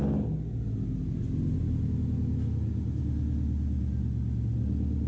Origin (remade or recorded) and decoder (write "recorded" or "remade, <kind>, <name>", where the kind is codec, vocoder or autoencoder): recorded